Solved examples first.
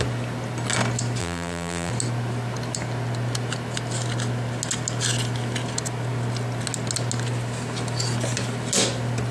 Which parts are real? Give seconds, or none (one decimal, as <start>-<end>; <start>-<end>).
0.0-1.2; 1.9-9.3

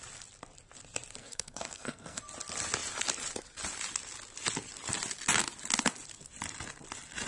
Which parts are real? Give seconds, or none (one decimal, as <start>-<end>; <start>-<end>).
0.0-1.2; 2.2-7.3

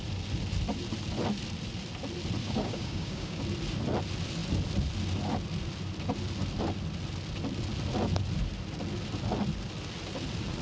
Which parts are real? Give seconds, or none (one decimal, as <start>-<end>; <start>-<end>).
0.0-2.4; 3.4-10.6